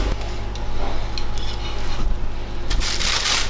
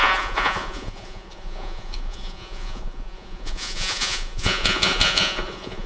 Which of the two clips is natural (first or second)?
first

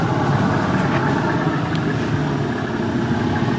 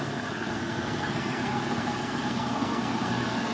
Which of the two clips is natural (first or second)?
first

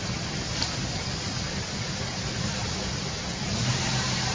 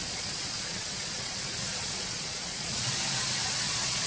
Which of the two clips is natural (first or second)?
first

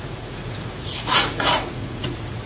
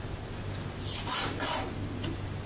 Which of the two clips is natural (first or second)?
second